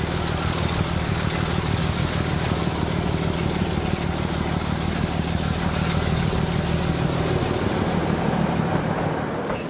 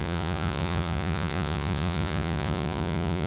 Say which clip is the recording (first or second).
first